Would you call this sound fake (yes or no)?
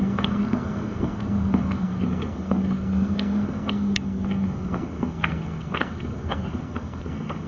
yes